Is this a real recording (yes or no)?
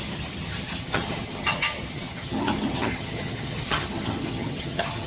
no